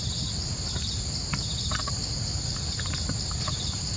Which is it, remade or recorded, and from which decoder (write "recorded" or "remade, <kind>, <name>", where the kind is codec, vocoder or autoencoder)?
recorded